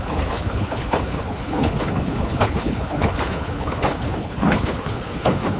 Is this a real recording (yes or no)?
no